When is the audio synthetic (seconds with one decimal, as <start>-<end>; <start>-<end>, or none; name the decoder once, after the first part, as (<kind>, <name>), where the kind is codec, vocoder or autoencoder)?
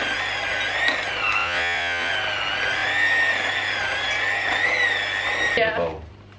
1.4-2.1 (vocoder, Vocos)